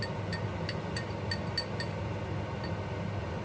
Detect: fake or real real